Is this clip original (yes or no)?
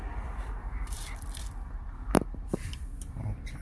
no